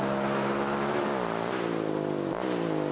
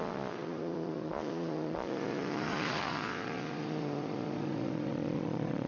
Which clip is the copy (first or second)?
second